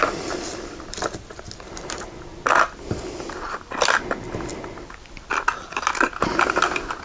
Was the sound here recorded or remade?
recorded